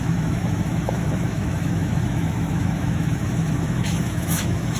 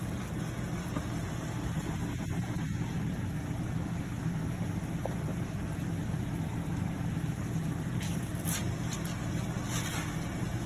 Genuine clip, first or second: second